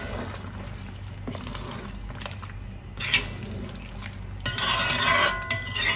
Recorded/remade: recorded